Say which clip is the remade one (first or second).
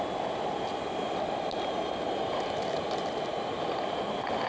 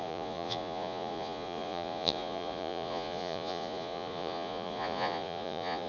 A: second